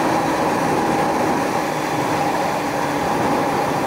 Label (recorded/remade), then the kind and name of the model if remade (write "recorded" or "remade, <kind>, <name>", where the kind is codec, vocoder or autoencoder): recorded